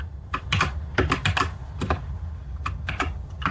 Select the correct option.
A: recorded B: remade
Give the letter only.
A